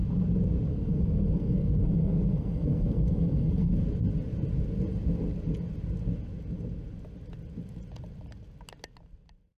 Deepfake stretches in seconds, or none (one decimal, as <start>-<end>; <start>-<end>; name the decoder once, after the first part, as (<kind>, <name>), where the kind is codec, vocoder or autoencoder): 0.7-3.7 (codec, SNAC)